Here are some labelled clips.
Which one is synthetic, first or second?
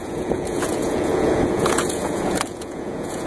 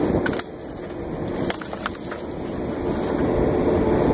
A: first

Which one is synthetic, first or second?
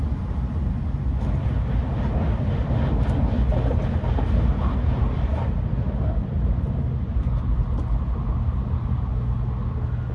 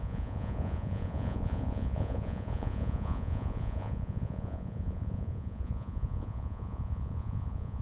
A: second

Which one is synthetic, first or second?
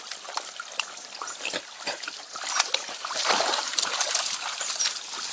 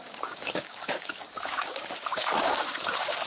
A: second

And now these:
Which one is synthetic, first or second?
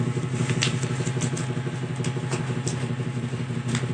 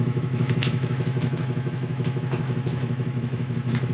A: second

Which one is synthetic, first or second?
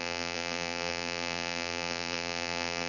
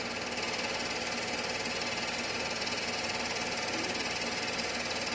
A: first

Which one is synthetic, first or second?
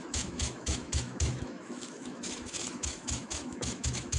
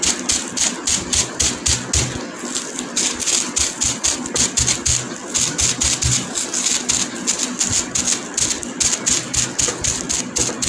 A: first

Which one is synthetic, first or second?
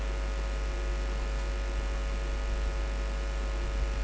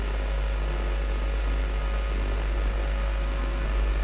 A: second